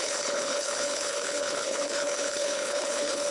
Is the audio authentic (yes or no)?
no